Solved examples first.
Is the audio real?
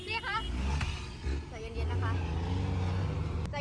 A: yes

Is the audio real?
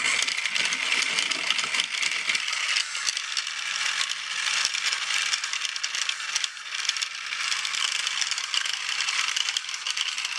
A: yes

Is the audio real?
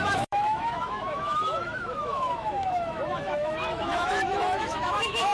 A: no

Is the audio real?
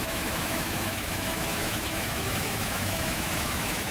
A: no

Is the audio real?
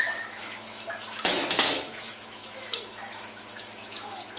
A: no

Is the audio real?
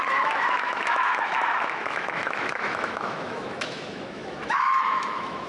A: no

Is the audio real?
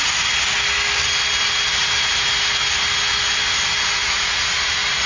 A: yes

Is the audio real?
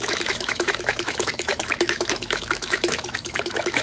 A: no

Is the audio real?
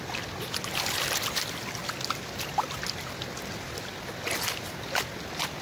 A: yes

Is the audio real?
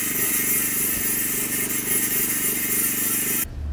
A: yes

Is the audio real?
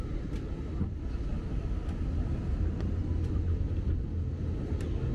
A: yes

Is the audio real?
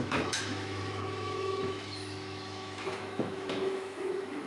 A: no